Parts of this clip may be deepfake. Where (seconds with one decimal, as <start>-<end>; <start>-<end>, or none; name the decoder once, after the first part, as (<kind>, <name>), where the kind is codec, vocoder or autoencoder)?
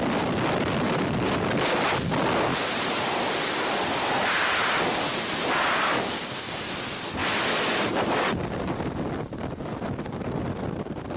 2.5-6.5 (vocoder, BigVGAN v2); 7.2-8.8